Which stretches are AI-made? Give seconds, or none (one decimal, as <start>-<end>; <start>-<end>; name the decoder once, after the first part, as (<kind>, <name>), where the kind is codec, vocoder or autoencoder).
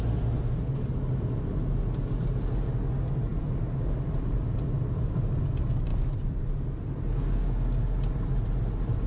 3.3-5.4 (vocoder, BigVGAN v2); 5.9-6.4